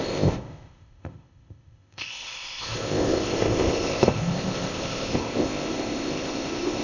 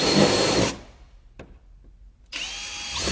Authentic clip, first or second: second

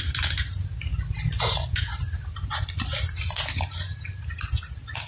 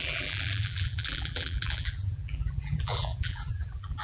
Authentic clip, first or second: first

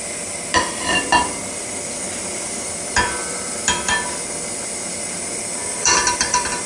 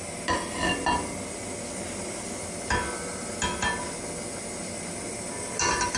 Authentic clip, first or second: second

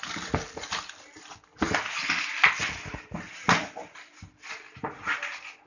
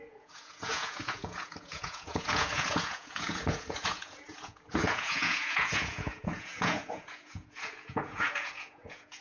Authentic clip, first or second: first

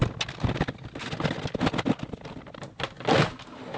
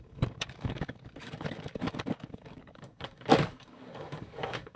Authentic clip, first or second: first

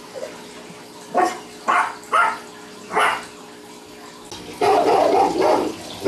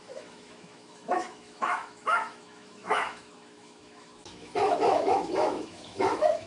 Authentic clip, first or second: first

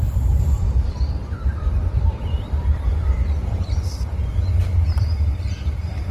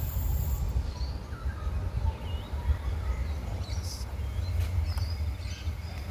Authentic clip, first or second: second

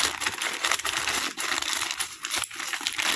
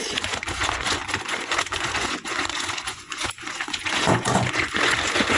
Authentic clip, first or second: first